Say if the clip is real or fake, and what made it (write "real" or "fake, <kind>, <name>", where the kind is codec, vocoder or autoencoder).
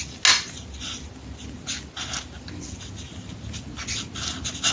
real